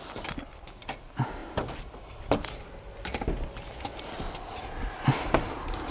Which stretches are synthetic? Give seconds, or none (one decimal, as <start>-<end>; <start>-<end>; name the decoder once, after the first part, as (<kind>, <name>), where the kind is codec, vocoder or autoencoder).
none